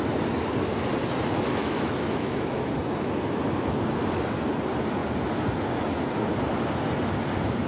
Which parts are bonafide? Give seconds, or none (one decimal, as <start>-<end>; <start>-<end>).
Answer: 0.0-1.5; 2.7-7.7